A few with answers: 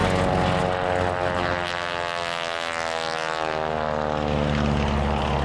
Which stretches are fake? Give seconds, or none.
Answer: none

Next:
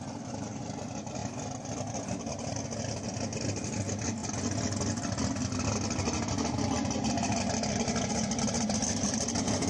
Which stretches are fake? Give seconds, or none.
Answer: none

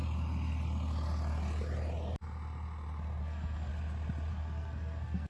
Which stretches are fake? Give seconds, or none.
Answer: 3.2-3.7; 4.3-5.3

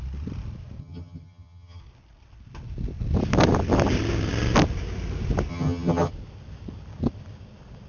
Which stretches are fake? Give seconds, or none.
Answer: 0.8-1.8; 5.5-6.1

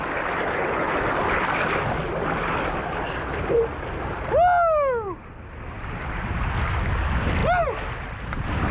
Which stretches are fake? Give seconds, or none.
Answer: none